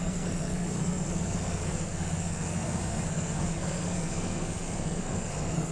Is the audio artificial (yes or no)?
yes